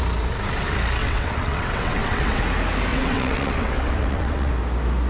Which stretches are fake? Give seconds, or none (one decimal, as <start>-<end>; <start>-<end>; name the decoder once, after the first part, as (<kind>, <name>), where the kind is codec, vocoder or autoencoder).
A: 1.0-2.4 (vocoder, WaveNeXt); 2.9-4.5